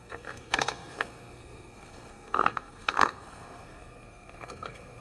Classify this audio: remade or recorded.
remade